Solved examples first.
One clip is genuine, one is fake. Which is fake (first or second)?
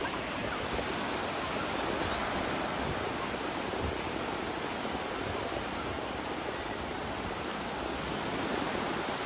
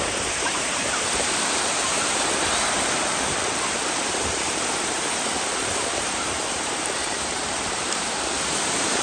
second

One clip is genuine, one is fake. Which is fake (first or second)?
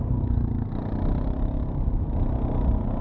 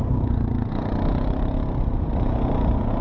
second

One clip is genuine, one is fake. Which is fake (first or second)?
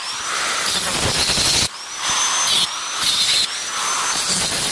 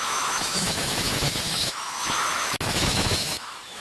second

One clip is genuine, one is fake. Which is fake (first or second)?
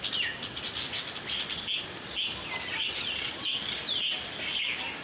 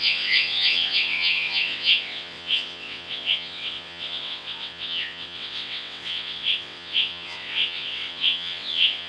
second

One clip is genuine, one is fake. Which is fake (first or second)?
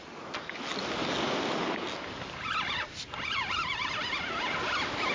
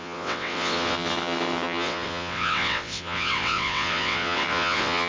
second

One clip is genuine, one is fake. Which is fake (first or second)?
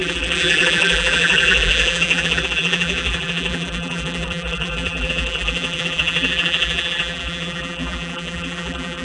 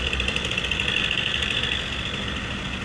first